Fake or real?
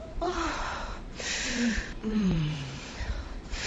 fake